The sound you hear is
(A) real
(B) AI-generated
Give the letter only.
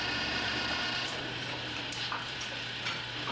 B